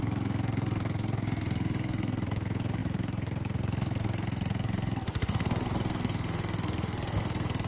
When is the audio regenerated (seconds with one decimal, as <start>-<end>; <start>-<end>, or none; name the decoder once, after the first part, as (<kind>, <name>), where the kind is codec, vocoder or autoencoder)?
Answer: 0.0-7.7 (codec, SNAC)